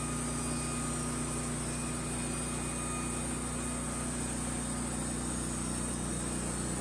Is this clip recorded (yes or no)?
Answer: yes